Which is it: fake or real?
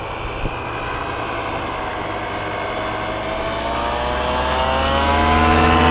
real